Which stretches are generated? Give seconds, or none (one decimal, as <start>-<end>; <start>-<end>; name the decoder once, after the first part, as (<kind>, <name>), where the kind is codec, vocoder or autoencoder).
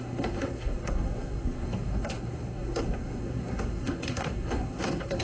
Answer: 0.0-5.2 (codec, SNAC)